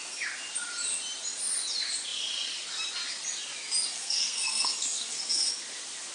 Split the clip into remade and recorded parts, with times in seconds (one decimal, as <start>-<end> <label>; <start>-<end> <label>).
0.0-3.9 recorded; 3.9-5.5 remade; 5.5-6.1 recorded